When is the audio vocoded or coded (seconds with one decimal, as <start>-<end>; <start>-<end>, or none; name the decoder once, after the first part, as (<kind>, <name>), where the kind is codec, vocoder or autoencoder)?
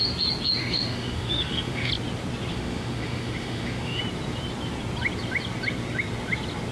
0.6-1.9 (autoencoder, DAC-VAE); 2.5-4.0